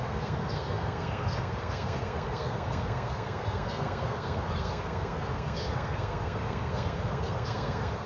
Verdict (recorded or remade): remade